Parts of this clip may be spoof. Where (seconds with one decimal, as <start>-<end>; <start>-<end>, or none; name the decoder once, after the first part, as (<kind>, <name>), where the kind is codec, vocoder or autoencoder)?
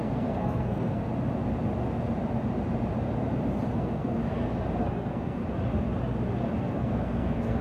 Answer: 0.0-1.1 (codec, SNAC); 3.7-4.2; 4.8-5.4; 6.6-7.6